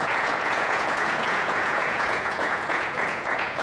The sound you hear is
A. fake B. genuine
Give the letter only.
A